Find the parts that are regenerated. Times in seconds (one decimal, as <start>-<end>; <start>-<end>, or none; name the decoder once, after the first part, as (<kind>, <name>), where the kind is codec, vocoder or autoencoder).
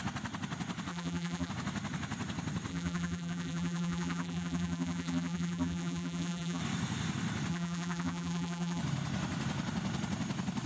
0.9-1.5 (vocoder, BigVGAN v2); 2.7-6.6; 7.5-8.8